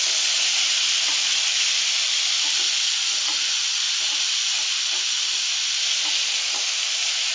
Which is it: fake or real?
real